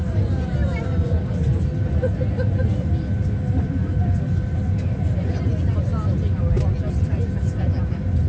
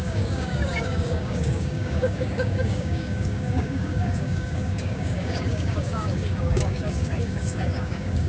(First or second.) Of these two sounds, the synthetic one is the second